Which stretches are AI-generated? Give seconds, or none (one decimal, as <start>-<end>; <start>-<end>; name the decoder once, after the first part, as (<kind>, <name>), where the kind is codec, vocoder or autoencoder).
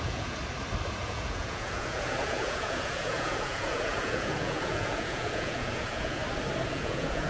0.0-0.4 (vocoder, Vocos); 1.0-6.2; 6.7-7.3